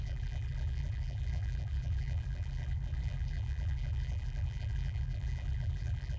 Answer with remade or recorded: remade